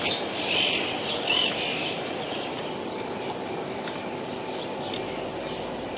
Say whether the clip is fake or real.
real